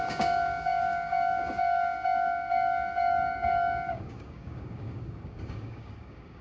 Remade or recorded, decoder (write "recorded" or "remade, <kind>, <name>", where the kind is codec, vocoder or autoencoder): remade, codec, DAC